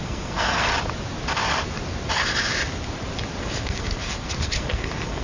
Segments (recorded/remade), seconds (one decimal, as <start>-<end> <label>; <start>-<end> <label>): 0.0-0.7 remade; 0.7-3.4 recorded; 3.4-5.2 remade